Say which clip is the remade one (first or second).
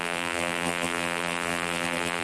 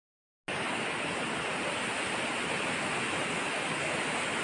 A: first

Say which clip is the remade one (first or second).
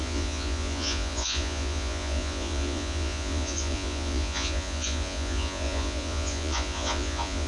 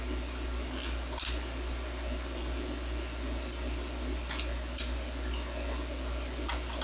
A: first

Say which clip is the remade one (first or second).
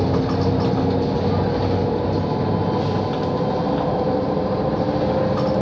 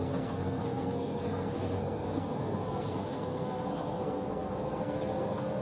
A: second